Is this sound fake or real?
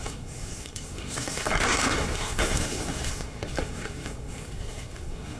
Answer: fake